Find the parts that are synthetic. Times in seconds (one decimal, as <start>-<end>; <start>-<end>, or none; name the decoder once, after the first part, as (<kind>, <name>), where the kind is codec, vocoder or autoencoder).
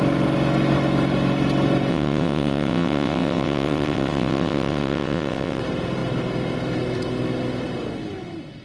1.9-5.6 (vocoder, WaveNeXt)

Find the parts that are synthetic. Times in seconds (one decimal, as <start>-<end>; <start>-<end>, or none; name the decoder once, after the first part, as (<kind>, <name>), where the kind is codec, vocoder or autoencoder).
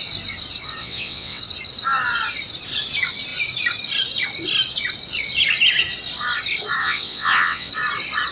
0.8-1.4 (vocoder, WaveNeXt); 6.8-7.7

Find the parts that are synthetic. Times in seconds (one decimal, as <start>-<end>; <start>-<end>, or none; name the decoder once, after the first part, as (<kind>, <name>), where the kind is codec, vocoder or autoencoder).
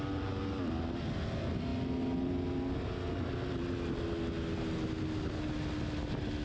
none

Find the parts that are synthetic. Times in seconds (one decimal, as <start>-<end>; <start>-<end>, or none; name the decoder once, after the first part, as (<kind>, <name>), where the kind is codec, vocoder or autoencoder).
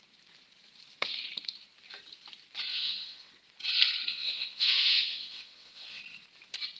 2.7-3.3 (vocoder, WaveNeXt); 4.1-6.0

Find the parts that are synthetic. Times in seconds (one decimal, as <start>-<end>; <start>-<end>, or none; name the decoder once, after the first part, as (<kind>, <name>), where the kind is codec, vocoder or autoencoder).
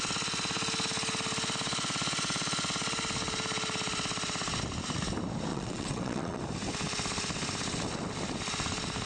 5.5-6.4 (vocoder, WaveNeXt)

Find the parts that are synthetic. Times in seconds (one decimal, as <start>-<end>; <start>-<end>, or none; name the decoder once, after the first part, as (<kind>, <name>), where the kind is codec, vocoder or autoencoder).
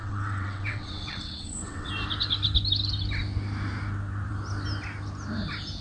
0.0-1.9 (vocoder, WaveNeXt)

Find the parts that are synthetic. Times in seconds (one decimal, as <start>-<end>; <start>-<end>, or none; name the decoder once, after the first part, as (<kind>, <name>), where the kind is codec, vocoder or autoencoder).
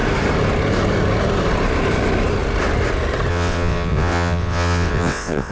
3.3-5.5 (vocoder, WaveNeXt)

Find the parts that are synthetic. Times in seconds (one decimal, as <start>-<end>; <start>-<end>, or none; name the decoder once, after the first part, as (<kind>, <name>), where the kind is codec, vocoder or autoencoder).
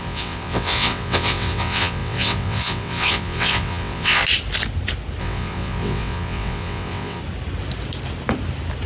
0.0-4.2 (vocoder, WaveNeXt); 5.2-7.2